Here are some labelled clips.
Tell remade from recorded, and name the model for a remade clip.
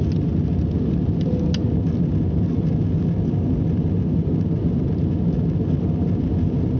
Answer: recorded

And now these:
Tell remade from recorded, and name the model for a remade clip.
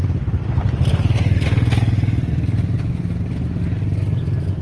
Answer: recorded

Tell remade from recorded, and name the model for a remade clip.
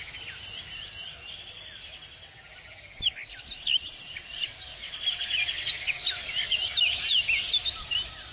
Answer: remade, vocoder, BigVGAN v2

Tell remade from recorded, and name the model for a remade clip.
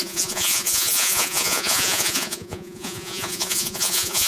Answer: remade, vocoder, Vocos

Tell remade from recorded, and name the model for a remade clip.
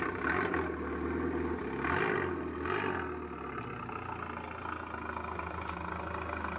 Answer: recorded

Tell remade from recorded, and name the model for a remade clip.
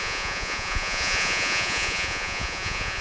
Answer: remade, vocoder, Vocos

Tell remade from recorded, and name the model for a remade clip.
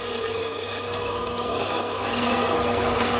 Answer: remade, codec, SNAC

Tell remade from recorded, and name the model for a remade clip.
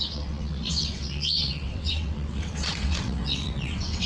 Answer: remade, vocoder, WaveNeXt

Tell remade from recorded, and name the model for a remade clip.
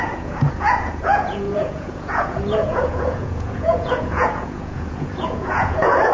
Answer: remade, vocoder, Vocos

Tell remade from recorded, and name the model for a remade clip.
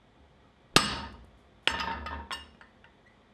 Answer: recorded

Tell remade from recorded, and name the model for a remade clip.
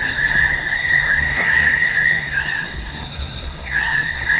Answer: remade, codec, SNAC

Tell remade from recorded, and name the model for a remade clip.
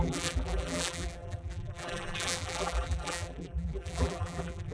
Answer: remade, vocoder, BigVGAN v2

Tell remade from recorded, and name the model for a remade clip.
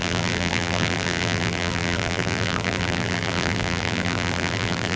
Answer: remade, vocoder, BigVGAN v2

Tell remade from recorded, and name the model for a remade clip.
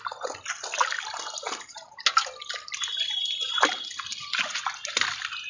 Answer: recorded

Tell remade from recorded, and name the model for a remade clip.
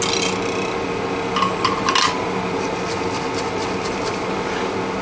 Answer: recorded